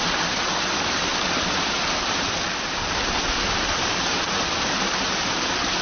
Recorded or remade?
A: recorded